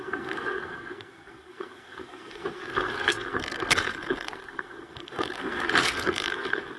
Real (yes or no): no